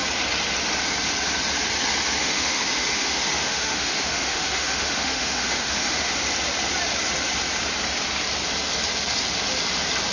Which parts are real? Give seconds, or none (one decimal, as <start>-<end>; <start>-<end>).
0.0-2.2; 6.1-10.1